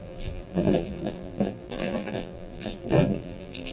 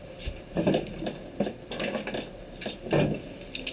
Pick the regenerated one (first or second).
first